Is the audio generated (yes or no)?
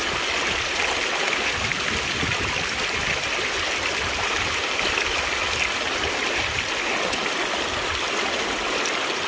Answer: no